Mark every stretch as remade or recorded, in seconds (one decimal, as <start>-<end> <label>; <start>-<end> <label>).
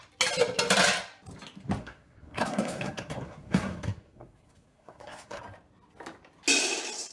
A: 0.0-1.8 recorded; 1.8-5.4 remade; 5.4-7.1 recorded